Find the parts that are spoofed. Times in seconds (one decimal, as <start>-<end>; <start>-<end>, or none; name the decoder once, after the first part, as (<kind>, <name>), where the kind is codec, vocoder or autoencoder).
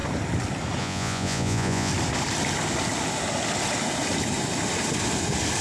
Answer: 0.8-1.9 (vocoder, Vocos)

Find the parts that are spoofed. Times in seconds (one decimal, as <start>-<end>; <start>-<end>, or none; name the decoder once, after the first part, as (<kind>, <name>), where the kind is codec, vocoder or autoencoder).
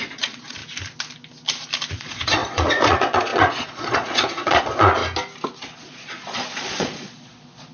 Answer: 0.0-0.6 (vocoder, Vocos); 1.9-5.0; 5.7-7.7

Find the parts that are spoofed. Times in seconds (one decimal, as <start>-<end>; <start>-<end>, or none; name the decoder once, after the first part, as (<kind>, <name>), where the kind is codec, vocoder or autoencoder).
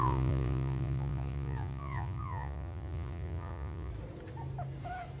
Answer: 0.0-3.9 (vocoder, Vocos)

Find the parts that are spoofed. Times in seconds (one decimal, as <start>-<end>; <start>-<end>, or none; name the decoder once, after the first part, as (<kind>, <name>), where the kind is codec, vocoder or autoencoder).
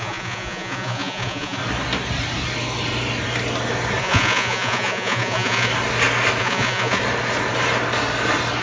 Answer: 0.0-1.6 (vocoder, Vocos); 4.0-5.7; 6.4-7.0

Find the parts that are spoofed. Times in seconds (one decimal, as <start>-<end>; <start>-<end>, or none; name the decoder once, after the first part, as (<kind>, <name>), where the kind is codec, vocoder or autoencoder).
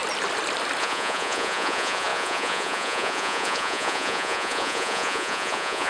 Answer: 0.8-5.9 (vocoder, Vocos)